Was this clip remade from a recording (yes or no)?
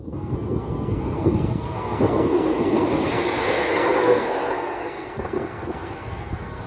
yes